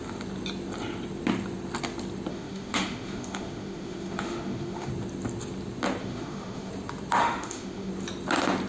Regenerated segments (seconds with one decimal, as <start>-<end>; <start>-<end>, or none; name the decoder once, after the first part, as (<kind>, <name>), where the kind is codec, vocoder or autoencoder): 2.3-4.9 (autoencoder, DAC-VAE); 6.0-6.7; 7.2-7.9